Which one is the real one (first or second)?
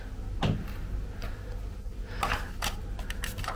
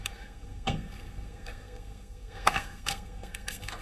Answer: first